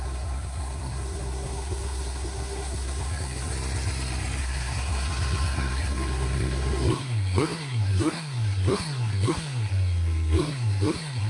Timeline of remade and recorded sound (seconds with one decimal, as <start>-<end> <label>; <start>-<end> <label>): 0.0-3.5 remade; 3.5-4.4 recorded; 4.4-11.3 remade